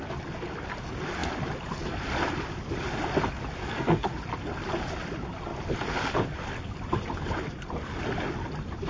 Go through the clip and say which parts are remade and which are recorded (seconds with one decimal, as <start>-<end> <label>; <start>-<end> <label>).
0.0-3.6 recorded; 3.6-4.1 remade; 4.1-8.9 recorded